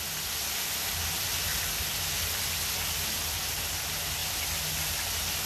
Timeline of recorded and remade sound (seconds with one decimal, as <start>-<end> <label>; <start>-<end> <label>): 0.0-5.5 recorded